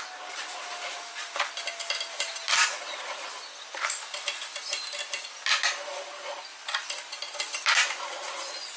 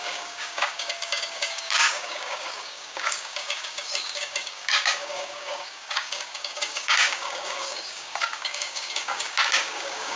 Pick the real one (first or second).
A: first